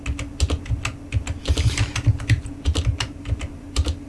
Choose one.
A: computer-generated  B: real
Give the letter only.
B